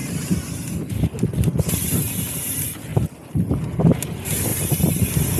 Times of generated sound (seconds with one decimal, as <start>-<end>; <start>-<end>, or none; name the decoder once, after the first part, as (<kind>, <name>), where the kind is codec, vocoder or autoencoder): none